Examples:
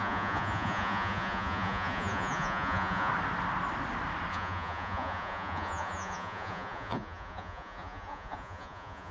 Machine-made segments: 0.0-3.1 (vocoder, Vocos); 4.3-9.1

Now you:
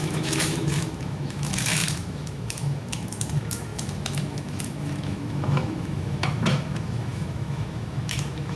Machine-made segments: 0.0-8.6 (autoencoder, DAC-VAE)